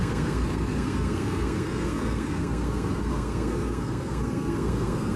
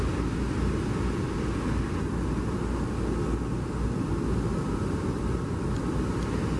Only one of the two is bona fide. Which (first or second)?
second